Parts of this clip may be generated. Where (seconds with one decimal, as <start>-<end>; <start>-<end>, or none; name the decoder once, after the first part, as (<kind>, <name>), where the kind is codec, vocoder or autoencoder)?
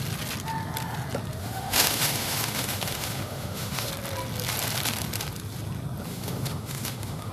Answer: 1.4-3.9 (autoencoder, DAC-VAE); 6.1-7.3